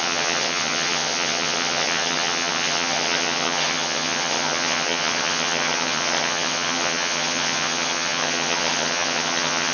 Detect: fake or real fake